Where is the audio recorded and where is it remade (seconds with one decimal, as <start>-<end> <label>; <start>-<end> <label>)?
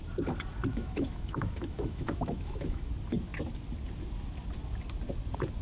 0.0-0.7 recorded; 0.7-2.9 remade; 2.9-5.6 recorded